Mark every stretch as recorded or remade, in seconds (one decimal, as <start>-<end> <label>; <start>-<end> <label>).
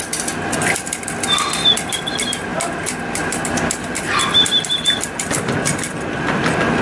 0.0-2.5 recorded; 2.5-6.2 remade; 6.2-6.8 recorded